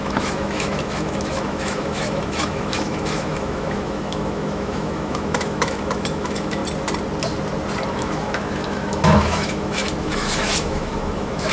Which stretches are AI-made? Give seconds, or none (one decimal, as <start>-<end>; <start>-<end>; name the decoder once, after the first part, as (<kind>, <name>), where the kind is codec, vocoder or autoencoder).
0.0-6.6 (autoencoder, DAC-VAE); 7.9-11.5